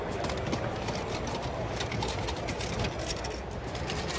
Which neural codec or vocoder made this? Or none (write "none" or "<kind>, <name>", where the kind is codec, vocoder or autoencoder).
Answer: vocoder, BigVGAN v2